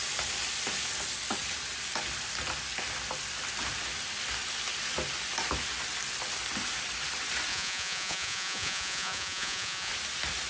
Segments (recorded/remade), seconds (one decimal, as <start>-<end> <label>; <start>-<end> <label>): 0.0-7.5 recorded; 7.5-9.9 remade; 9.9-10.5 recorded

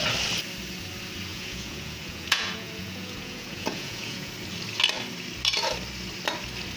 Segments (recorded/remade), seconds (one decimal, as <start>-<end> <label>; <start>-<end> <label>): 0.0-1.3 recorded; 1.3-4.3 remade; 4.3-6.8 recorded

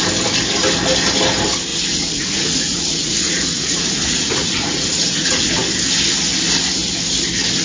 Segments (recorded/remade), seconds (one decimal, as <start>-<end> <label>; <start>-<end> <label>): 0.0-1.7 recorded; 1.7-5.5 remade; 5.5-7.6 recorded